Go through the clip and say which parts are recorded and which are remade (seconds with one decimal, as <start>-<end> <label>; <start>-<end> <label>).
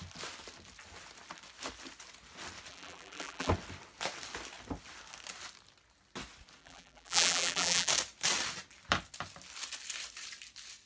0.0-2.7 recorded; 2.7-3.5 remade; 3.5-6.6 recorded; 6.6-7.9 remade; 7.9-10.9 recorded